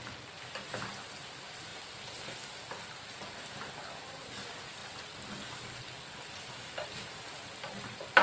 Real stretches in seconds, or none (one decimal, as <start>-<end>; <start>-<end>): 0.0-8.2